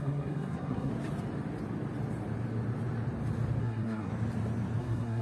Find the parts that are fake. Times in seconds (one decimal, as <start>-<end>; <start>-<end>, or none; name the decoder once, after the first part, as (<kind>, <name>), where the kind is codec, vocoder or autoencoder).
0.0-0.9 (codec, SNAC); 3.6-4.1; 4.8-5.2